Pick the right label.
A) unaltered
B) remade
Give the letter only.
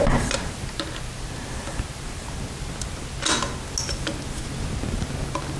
A